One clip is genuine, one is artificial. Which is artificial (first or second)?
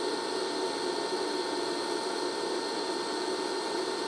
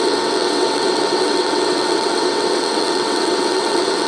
second